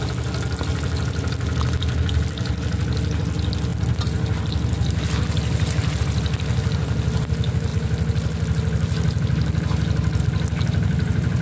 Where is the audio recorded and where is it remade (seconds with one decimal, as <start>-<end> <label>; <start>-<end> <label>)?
0.0-11.4 recorded